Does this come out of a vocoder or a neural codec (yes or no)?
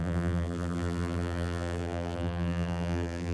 yes